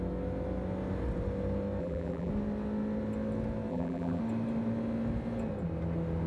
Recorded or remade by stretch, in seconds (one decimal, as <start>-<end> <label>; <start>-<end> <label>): 0.0-1.8 recorded; 1.8-2.3 remade; 2.3-3.7 recorded; 3.7-4.2 remade; 4.2-6.3 recorded